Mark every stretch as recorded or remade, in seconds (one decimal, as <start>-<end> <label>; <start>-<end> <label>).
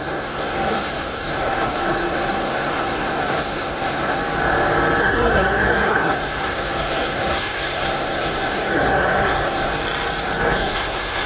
0.0-4.2 remade; 4.2-5.0 recorded; 5.0-9.7 remade; 9.7-10.6 recorded; 10.6-11.3 remade